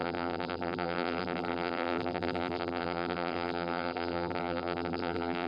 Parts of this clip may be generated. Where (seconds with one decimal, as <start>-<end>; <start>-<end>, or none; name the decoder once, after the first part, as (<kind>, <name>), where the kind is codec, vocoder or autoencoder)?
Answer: 0.0-5.5 (vocoder, BigVGAN v2)